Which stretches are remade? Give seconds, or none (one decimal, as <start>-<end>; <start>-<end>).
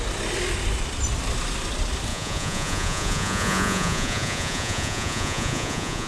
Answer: 2.1-6.1